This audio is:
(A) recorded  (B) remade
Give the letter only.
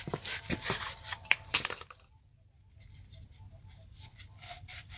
A